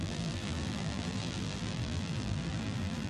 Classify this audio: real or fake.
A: fake